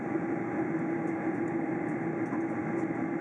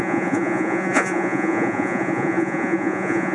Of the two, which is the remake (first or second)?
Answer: second